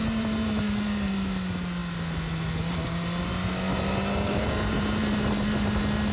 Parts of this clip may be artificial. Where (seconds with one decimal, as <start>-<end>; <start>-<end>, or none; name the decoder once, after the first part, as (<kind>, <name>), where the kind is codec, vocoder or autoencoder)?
0.0-1.1 (vocoder, BigVGAN v2); 3.7-5.3